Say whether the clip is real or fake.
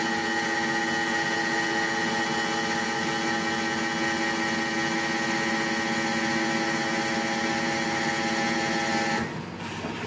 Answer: real